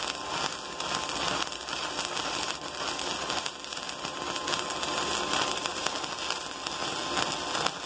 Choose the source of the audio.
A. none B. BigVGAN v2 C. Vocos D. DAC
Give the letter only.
A